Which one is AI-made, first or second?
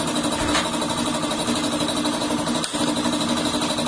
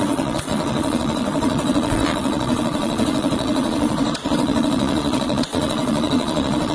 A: second